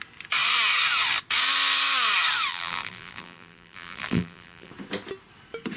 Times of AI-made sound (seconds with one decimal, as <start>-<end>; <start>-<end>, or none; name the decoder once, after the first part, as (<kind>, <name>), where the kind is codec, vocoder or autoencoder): 2.5-4.7 (vocoder, BigVGAN v2)